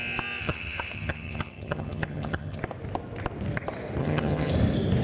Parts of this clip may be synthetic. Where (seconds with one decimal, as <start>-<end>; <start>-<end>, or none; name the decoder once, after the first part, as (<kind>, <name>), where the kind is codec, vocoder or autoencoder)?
0.4-2.6 (vocoder, HiFi-GAN); 4.0-4.5